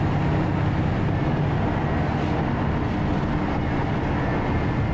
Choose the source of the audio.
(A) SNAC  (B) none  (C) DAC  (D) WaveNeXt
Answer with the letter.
B